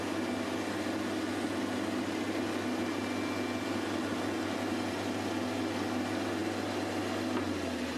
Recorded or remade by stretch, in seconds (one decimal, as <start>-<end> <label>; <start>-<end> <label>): 0.0-8.0 recorded